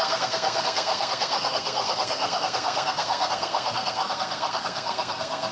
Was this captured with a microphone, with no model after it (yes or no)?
no